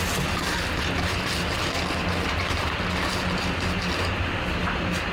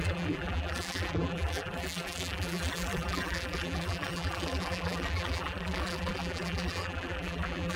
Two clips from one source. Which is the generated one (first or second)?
second